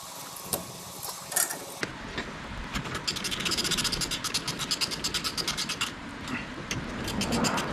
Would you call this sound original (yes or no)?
yes